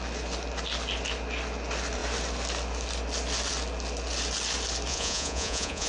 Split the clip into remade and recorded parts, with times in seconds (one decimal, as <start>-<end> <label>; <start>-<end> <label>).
0.0-4.9 recorded; 4.9-5.9 remade